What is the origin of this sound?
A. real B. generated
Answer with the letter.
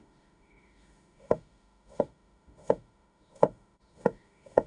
B